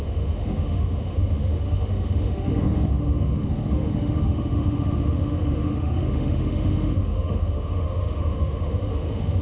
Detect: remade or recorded remade